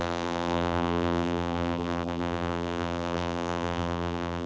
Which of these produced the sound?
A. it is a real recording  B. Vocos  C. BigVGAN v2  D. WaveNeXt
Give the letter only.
C